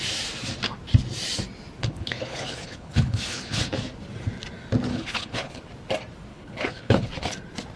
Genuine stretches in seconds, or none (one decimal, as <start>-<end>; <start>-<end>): 0.0-1.8; 3.7-4.9; 5.6-6.3; 7.1-7.8